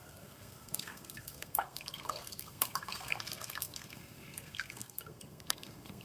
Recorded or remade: remade